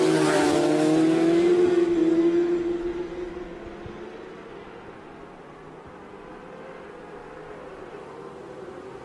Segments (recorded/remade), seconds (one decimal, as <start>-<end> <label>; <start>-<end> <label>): 0.0-0.4 recorded; 0.4-1.5 remade; 1.5-9.0 recorded